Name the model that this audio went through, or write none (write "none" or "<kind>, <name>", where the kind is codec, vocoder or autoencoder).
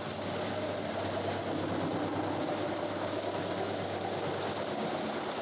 none